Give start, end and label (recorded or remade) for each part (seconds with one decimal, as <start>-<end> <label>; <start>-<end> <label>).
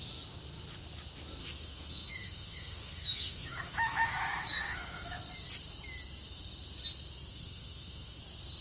0.0-1.4 recorded; 1.4-5.2 remade; 5.2-7.3 recorded; 7.3-8.2 remade; 8.2-8.6 recorded